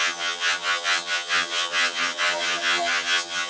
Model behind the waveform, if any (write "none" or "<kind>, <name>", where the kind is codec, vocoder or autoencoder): vocoder, HiFi-GAN